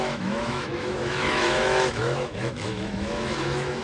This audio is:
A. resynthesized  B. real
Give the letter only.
A